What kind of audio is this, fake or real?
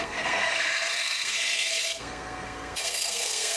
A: fake